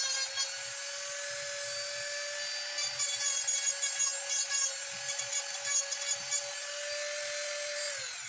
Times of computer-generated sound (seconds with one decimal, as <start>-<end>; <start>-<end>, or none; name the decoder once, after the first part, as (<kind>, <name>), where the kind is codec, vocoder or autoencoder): none